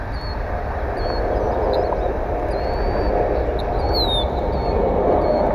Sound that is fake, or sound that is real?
real